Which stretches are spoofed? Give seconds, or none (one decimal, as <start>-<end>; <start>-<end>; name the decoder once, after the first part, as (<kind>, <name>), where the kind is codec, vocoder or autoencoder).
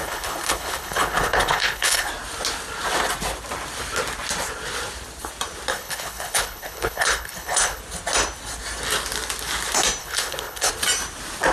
0.0-2.1 (codec, HILCodec); 5.7-7.8; 10.0-10.7